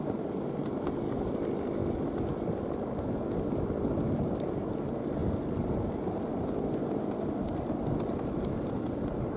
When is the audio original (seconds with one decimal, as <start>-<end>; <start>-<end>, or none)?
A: 0.0-9.4